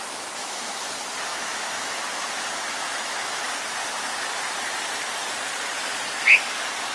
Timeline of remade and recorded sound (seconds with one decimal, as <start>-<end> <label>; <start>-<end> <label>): 0.0-0.4 recorded; 0.4-0.9 remade; 0.9-1.3 recorded; 1.3-2.0 remade; 2.0-2.5 recorded; 2.5-3.4 remade; 3.4-6.9 recorded